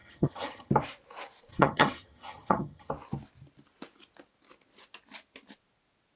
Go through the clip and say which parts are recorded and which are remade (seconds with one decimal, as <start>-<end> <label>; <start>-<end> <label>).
0.0-0.7 remade; 0.7-1.5 recorded; 1.5-2.9 remade; 2.9-6.2 recorded